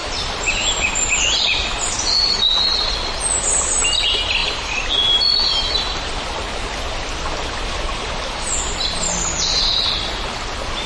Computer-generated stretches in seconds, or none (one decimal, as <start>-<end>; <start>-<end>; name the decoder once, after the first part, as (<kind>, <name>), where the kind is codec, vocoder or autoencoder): none